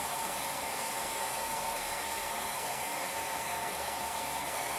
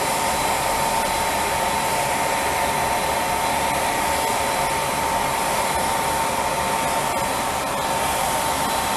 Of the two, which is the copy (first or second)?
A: first